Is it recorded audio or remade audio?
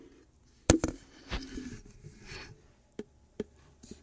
recorded